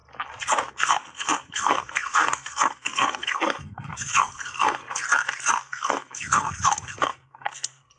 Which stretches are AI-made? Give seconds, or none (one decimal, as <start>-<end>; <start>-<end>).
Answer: 0.7-4.8; 5.5-8.0